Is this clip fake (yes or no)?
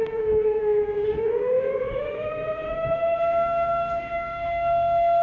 yes